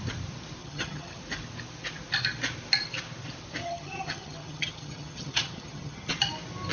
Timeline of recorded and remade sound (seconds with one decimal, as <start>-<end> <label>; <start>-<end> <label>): 0.0-0.6 recorded; 0.6-1.2 remade; 1.2-3.6 recorded; 3.6-6.1 remade; 6.1-6.7 recorded